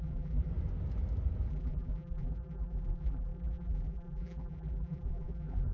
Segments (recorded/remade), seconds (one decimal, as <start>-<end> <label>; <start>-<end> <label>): 0.0-0.5 remade; 0.5-1.5 recorded; 1.5-5.7 remade